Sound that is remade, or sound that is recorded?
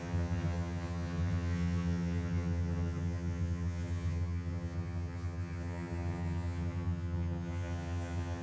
remade